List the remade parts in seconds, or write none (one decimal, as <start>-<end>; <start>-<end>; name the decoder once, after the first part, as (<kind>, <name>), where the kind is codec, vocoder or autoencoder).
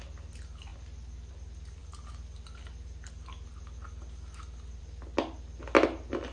none